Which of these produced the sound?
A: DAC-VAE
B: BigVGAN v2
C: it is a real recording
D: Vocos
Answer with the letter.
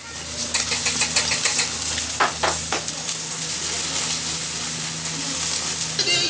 C